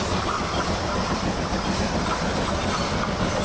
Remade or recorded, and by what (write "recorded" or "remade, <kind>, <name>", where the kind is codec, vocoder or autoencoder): recorded